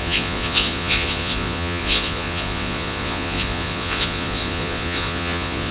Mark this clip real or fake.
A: fake